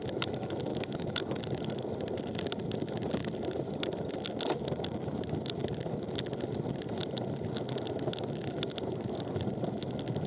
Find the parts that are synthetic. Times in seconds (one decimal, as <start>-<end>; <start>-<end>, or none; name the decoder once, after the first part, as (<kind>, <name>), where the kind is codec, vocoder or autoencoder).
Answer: 0.7-1.4 (autoencoder, DAC-VAE)